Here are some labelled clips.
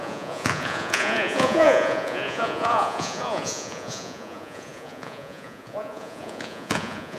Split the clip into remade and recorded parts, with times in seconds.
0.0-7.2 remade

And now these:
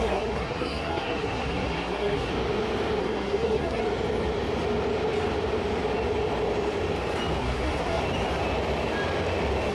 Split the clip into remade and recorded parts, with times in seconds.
0.0-2.3 remade; 2.3-3.0 recorded; 3.0-3.8 remade; 3.8-7.4 recorded; 7.4-8.0 remade; 8.0-9.7 recorded

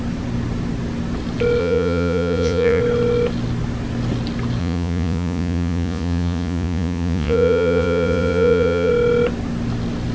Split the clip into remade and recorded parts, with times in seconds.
0.0-1.6 recorded; 1.6-2.8 remade; 2.8-4.6 recorded; 4.6-8.9 remade; 8.9-10.1 recorded

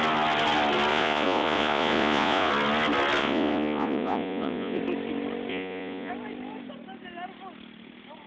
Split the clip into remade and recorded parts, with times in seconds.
0.0-0.9 recorded; 0.9-2.5 remade; 2.5-3.2 recorded; 3.2-4.8 remade; 4.8-5.5 recorded; 5.5-6.1 remade; 6.1-8.3 recorded

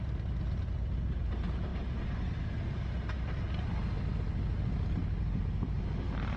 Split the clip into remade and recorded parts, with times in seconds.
0.0-6.4 recorded